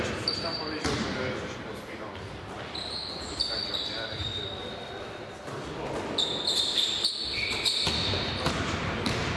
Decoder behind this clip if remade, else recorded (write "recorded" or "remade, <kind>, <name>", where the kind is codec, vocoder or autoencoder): remade, vocoder, BigVGAN v2